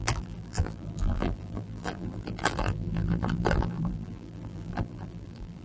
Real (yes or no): no